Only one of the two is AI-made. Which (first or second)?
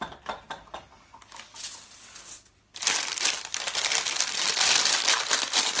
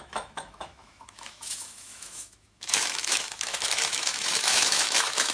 second